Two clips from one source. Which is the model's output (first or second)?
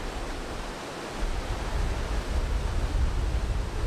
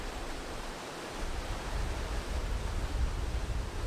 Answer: second